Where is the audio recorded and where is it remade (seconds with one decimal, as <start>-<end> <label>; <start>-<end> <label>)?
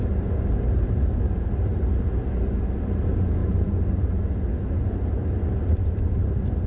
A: 0.0-1.0 recorded; 1.0-1.5 remade; 1.5-6.7 recorded